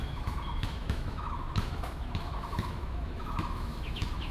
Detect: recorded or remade remade